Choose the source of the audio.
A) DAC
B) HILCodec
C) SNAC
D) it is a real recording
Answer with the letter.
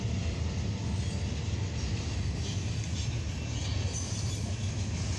D